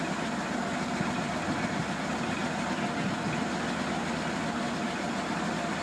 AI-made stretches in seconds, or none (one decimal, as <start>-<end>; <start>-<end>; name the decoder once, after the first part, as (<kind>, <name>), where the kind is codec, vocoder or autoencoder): none